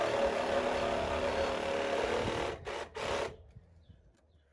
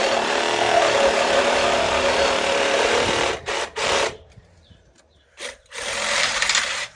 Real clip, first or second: first